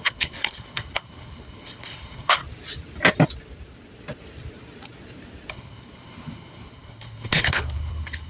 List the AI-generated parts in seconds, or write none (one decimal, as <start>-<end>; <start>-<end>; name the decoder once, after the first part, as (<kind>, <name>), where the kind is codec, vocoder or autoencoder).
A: 0.0-2.4 (codec, HILCodec); 5.5-8.3